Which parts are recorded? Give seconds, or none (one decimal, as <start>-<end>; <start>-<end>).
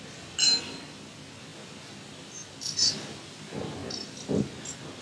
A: 0.0-5.0